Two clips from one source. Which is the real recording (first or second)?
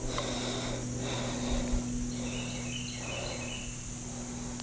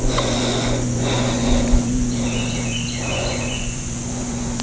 first